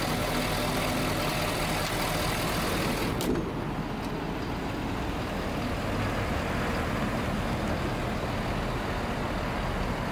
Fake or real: real